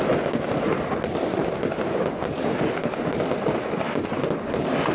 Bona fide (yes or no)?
yes